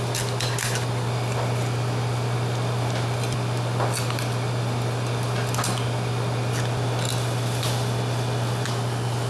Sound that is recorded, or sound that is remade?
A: recorded